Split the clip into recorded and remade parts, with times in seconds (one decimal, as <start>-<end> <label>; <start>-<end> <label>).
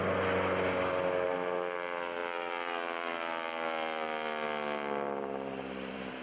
0.0-2.2 recorded; 2.2-6.2 remade